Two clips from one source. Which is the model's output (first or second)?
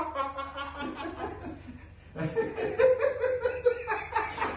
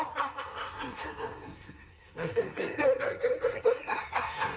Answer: second